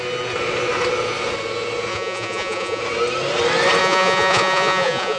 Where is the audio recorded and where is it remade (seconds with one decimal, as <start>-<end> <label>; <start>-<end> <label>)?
0.0-1.9 recorded; 1.9-2.8 remade; 2.8-3.8 recorded; 3.8-5.2 remade